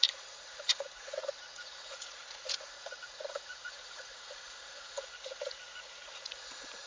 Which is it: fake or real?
fake